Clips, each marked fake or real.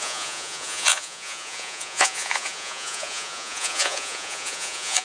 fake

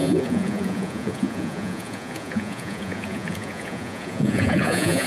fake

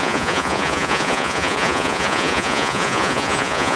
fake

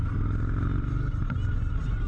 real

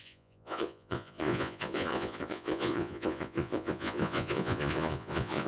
fake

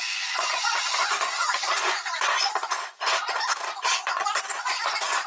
fake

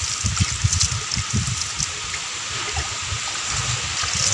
real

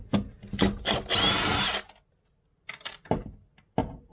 real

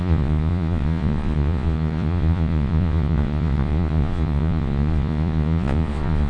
fake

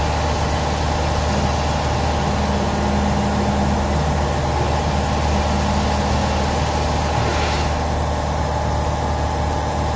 real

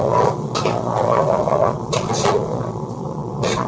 fake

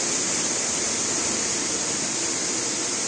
real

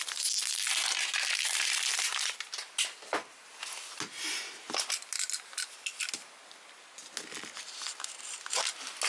real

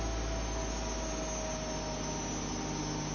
real